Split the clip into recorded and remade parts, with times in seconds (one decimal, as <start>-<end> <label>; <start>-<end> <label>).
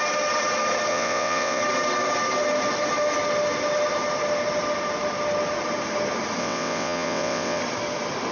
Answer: 0.0-0.9 recorded; 0.9-1.6 remade; 1.6-6.4 recorded; 6.4-7.6 remade; 7.6-8.3 recorded